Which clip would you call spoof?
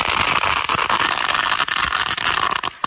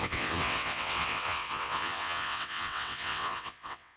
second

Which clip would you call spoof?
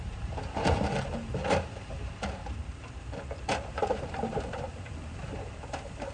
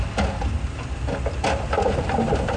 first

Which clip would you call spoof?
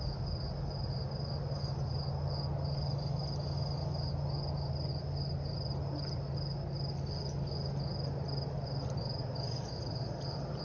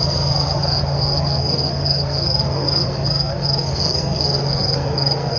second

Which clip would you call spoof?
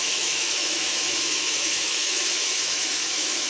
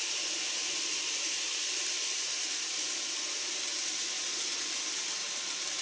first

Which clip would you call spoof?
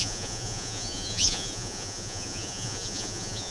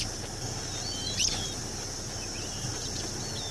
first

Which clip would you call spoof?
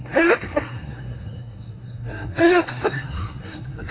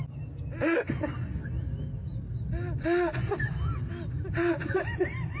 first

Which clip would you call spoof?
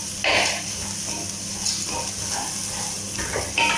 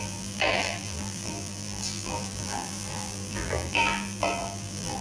second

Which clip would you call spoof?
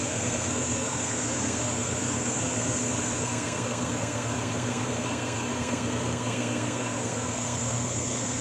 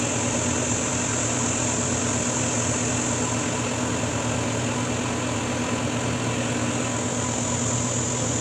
first